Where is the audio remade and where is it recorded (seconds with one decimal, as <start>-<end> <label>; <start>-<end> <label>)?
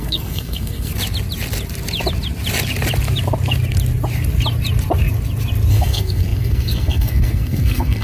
0.0-0.9 remade; 0.9-5.7 recorded; 5.7-8.0 remade